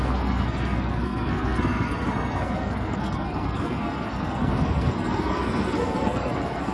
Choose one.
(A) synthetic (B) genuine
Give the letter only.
A